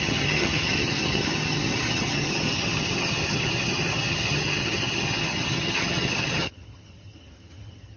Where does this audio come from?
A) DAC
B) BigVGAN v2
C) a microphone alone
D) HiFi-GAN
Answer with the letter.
D